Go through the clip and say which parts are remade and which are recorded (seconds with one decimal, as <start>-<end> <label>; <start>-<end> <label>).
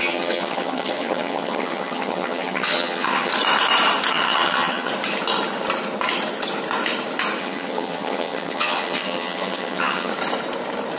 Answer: 0.0-3.3 remade; 3.3-4.1 recorded; 4.1-4.9 remade; 4.9-7.4 recorded; 7.4-10.1 remade; 10.1-11.0 recorded